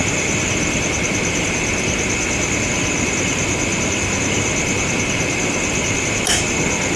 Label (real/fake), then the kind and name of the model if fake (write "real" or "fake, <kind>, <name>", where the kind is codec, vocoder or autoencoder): real